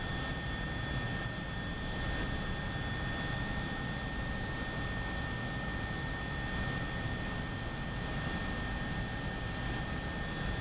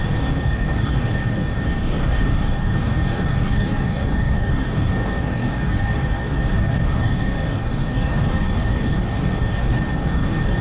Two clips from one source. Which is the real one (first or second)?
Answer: first